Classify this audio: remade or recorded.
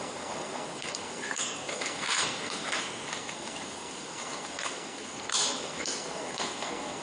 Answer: remade